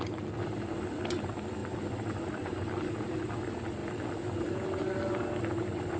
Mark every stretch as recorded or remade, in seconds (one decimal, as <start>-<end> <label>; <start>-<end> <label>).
0.0-6.0 recorded